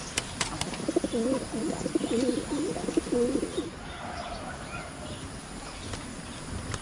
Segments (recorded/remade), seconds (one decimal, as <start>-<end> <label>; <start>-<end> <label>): 0.0-6.8 recorded